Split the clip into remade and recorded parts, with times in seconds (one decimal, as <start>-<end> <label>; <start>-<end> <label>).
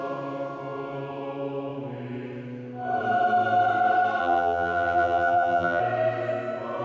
0.0-4.2 recorded; 4.2-5.8 remade; 5.8-6.8 recorded